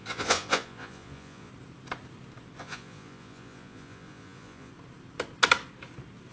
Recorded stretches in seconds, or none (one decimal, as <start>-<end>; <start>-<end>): 1.5-2.6; 4.7-6.3